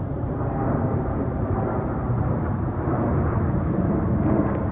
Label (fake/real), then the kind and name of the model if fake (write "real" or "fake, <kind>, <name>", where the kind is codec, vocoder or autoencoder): fake, vocoder, BigVGAN v2